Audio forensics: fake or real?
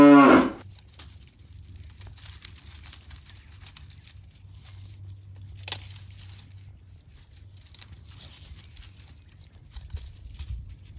real